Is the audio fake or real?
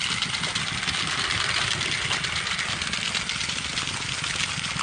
real